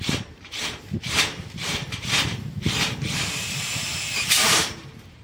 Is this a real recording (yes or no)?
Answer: no